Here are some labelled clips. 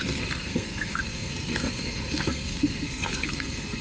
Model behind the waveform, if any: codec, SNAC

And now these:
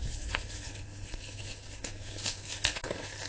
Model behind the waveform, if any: codec, SNAC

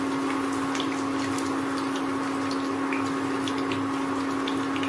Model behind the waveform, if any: none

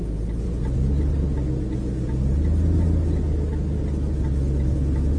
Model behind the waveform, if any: none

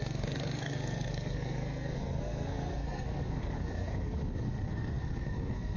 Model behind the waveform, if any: codec, SNAC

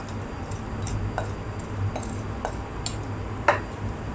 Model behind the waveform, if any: none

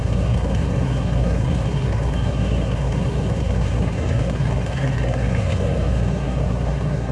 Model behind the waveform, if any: codec, SNAC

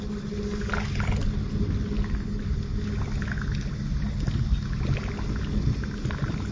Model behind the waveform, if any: none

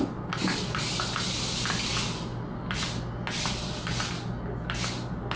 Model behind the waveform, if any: none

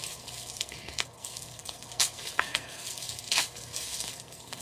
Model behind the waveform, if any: codec, SNAC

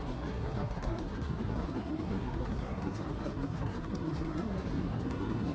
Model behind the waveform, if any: codec, SNAC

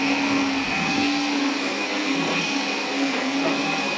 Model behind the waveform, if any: codec, SNAC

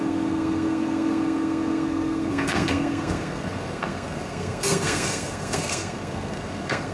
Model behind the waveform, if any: codec, SNAC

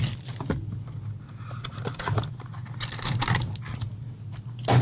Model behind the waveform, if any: none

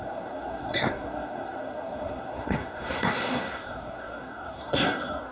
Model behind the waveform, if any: codec, SNAC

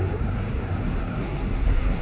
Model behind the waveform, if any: codec, SNAC